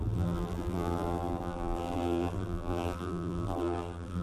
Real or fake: fake